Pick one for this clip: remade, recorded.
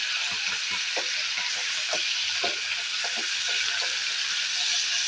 recorded